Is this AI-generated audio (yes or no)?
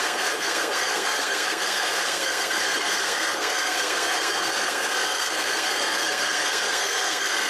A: yes